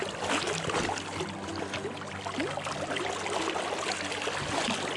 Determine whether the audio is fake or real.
real